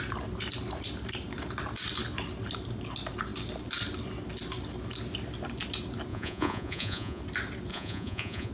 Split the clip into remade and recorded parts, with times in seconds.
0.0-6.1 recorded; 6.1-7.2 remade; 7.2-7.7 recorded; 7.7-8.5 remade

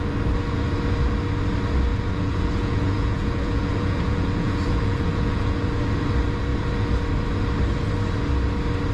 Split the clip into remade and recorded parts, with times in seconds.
0.0-1.9 recorded; 1.9-5.9 remade; 5.9-8.9 recorded

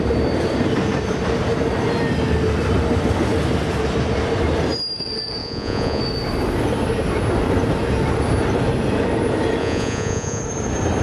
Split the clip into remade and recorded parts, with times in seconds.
0.0-5.4 recorded; 5.4-6.0 remade; 6.0-9.6 recorded; 9.6-10.4 remade; 10.4-11.0 recorded

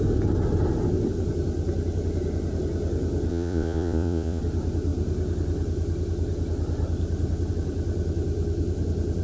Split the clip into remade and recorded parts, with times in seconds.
0.0-3.3 recorded; 3.3-4.4 remade; 4.4-9.2 recorded

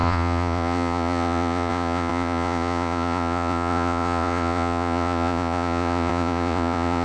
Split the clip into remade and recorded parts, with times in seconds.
0.0-7.0 remade

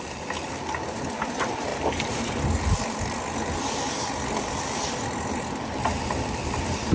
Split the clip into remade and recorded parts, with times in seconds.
0.0-6.9 recorded

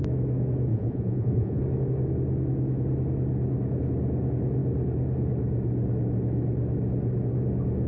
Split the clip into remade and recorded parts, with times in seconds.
0.0-0.7 recorded; 0.7-1.6 remade; 1.6-7.9 recorded